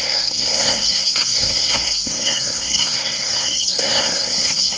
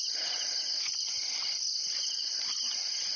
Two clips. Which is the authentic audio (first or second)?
second